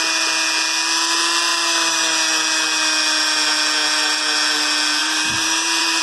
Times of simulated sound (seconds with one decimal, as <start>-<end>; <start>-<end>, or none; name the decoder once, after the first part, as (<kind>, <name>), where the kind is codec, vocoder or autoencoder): 5.0-6.0 (vocoder, BigVGAN v2)